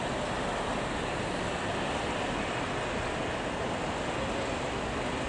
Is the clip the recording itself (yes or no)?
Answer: yes